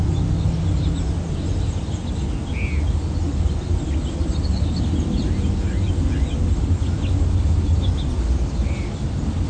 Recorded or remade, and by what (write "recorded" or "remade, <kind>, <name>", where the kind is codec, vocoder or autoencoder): recorded